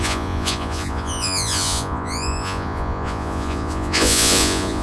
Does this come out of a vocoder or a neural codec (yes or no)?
yes